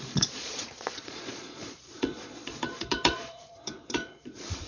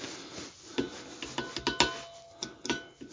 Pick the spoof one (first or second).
first